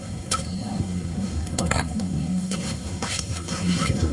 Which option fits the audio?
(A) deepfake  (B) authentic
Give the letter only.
A